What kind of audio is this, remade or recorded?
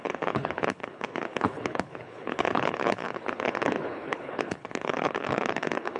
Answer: remade